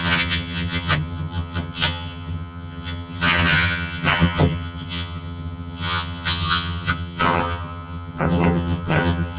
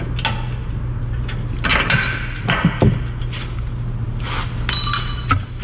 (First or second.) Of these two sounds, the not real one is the first